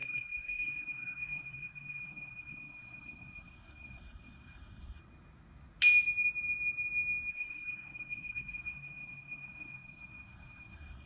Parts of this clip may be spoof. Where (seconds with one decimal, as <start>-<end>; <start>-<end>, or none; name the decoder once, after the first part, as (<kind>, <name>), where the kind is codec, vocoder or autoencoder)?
0.0-5.0 (codec, SNAC); 7.3-11.1